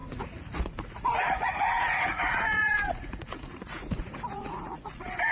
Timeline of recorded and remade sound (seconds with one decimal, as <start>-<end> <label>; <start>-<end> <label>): 0.0-5.3 remade